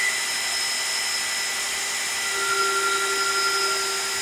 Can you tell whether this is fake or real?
real